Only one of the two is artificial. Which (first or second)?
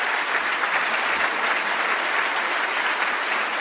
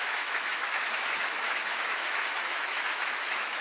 second